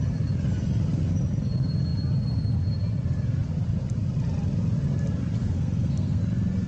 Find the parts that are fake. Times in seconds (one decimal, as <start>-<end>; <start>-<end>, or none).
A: 5.4-6.2